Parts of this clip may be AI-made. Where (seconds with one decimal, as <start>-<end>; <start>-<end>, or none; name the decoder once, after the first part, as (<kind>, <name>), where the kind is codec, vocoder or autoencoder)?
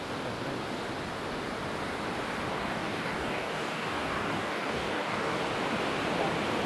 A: 2.5-5.4 (codec, DAC)